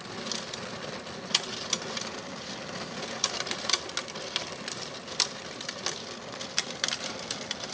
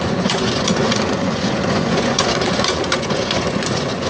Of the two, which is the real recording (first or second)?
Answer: first